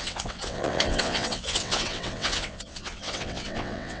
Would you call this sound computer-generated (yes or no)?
yes